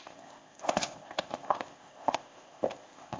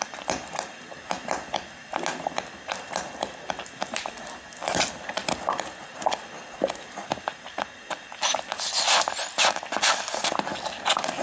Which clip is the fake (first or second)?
first